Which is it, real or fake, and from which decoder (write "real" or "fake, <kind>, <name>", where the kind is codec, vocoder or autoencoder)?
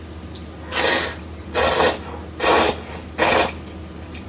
real